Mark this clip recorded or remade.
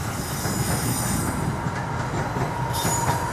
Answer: recorded